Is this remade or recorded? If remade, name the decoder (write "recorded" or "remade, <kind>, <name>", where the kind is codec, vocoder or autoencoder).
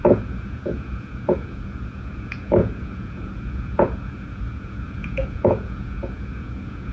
remade, vocoder, Vocos